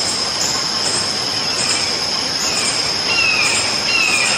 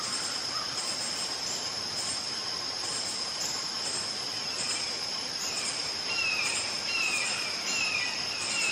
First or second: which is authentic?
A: first